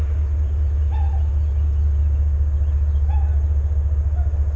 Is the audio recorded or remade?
recorded